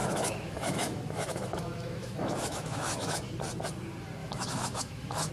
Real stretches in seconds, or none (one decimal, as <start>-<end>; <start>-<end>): 3.2-4.2